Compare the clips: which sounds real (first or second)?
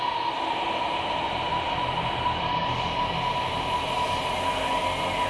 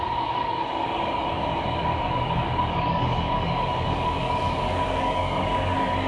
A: first